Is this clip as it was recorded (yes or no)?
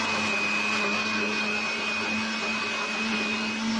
yes